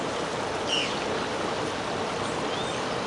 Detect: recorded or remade recorded